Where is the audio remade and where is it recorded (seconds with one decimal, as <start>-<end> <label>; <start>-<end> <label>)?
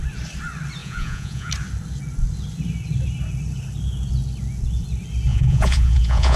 0.0-0.8 recorded; 0.8-1.5 remade; 1.5-5.3 recorded; 5.3-6.4 remade